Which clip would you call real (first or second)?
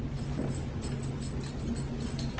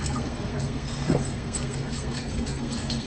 first